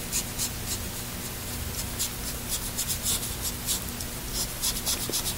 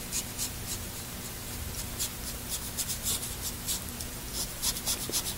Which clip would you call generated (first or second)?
second